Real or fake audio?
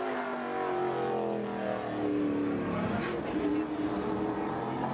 real